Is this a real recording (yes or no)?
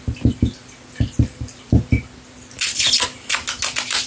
yes